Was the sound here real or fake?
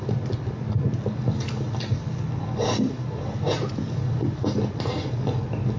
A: real